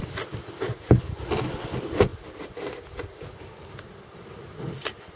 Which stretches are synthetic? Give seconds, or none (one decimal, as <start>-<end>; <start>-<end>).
none